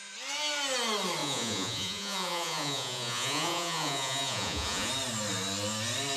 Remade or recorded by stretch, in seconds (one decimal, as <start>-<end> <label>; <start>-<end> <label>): 0.0-1.2 recorded; 1.2-4.9 remade; 4.9-6.2 recorded